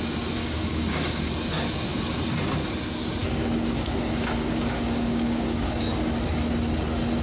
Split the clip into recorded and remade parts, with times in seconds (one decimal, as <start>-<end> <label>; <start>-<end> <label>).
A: 0.0-0.4 recorded; 0.4-1.2 remade; 1.2-3.2 recorded; 3.2-5.9 remade; 5.9-7.2 recorded